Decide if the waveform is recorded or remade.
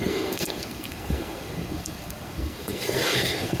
remade